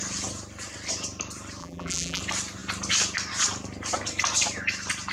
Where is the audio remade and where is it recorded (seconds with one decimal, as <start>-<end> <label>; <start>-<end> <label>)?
0.0-1.6 recorded; 1.6-2.2 remade; 2.2-5.1 recorded

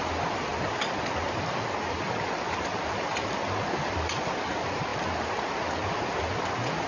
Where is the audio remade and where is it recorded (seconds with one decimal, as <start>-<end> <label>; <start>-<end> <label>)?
0.0-6.9 recorded

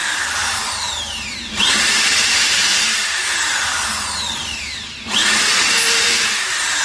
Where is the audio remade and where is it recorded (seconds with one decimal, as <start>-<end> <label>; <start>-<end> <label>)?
0.0-6.8 remade

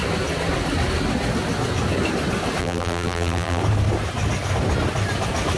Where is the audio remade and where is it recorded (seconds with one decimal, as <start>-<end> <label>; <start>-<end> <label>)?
0.0-2.6 recorded; 2.6-3.6 remade; 3.6-5.6 recorded

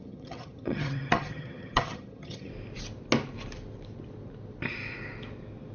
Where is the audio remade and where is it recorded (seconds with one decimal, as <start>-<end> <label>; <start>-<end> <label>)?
0.0-2.5 remade; 2.5-5.7 recorded

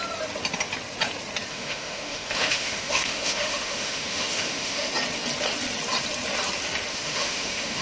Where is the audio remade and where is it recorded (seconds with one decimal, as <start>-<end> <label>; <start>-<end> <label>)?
0.0-1.5 recorded; 1.5-4.9 remade; 4.9-6.9 recorded; 6.9-7.8 remade

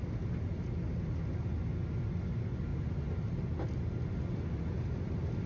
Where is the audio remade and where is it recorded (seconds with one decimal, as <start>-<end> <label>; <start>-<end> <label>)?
0.0-5.5 recorded